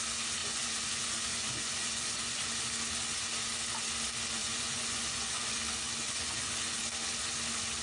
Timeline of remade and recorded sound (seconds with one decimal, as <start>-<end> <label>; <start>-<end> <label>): 0.0-0.4 recorded; 0.4-2.5 remade; 2.5-4.4 recorded; 4.4-5.6 remade; 5.6-6.0 recorded; 6.0-6.8 remade; 6.8-7.8 recorded

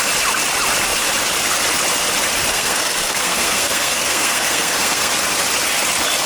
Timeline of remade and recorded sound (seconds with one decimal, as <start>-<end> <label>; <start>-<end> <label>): 0.0-2.5 recorded; 2.5-5.1 remade; 5.1-6.3 recorded